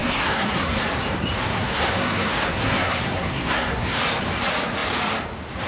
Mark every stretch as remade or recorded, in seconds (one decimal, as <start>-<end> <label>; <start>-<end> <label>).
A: 0.0-0.8 remade; 0.8-1.4 recorded; 1.4-4.0 remade; 4.0-5.7 recorded